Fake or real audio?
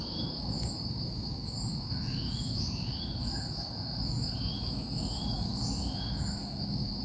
fake